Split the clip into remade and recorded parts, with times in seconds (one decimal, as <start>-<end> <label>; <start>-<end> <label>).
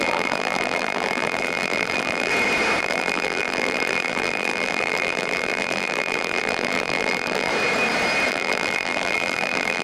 0.0-2.3 remade; 2.3-2.8 recorded; 2.8-7.5 remade; 7.5-8.3 recorded; 8.3-9.8 remade